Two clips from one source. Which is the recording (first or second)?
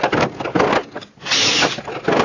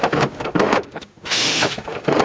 first